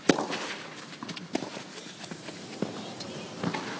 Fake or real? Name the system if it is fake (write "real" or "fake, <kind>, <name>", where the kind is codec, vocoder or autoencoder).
real